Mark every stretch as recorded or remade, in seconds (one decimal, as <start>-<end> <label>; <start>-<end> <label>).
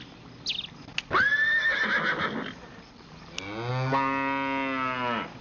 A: 0.0-5.4 recorded